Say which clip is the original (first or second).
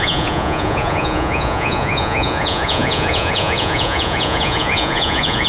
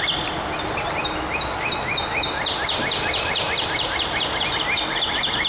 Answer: second